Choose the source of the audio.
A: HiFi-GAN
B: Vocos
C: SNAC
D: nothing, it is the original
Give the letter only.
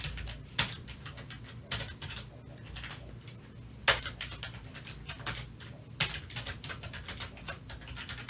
D